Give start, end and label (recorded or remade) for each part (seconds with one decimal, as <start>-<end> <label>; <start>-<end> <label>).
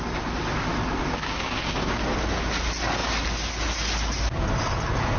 0.0-1.0 recorded; 1.0-2.0 remade; 2.0-5.2 recorded